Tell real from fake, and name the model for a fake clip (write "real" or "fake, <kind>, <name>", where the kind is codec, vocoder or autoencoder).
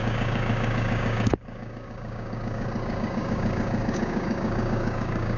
fake, codec, DAC